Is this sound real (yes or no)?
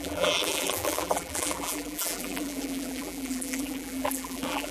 no